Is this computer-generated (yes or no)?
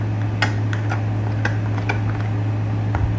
no